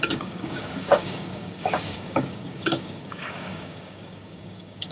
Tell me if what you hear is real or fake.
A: fake